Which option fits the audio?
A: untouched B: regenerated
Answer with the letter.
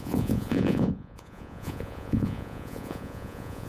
B